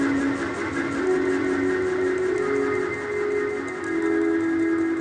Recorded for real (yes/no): yes